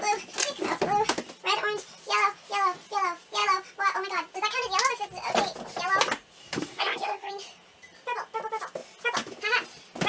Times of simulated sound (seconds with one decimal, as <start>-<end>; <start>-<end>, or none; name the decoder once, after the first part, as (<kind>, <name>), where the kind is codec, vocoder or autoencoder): 6.4-7.3 (codec, SNAC)